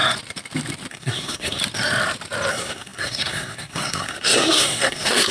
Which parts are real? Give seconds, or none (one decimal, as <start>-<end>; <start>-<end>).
0.0-0.9; 1.6-2.5